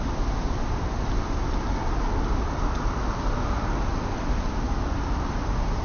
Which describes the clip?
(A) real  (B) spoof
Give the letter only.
A